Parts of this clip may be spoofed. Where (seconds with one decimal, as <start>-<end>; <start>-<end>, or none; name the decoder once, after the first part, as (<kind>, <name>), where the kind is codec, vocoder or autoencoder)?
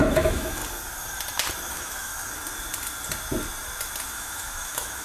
0.0-0.6 (autoencoder, DAC-VAE); 1.7-2.1; 4.0-5.0